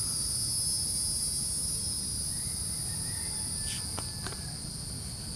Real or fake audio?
real